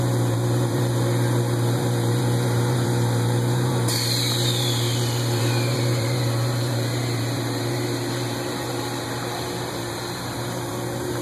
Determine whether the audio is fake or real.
fake